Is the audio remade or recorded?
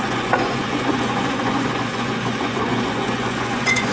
remade